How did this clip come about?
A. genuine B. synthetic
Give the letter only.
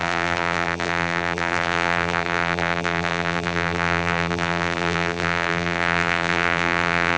B